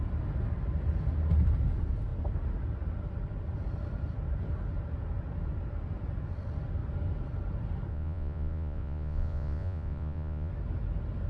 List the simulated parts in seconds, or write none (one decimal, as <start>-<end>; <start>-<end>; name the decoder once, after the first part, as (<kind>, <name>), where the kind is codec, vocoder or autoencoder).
7.9-10.5 (vocoder, Vocos)